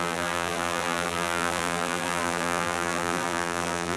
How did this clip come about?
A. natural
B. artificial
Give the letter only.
B